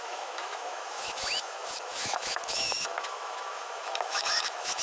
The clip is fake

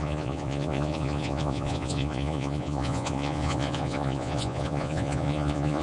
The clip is fake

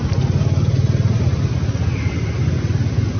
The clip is real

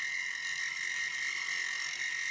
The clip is real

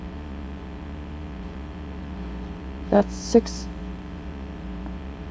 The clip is fake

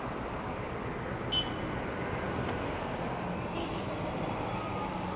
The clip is real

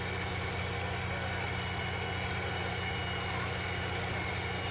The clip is real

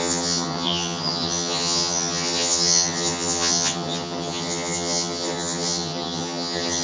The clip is fake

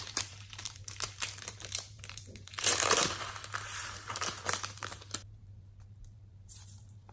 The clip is fake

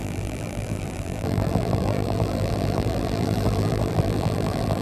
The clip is fake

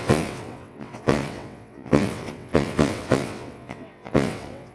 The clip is fake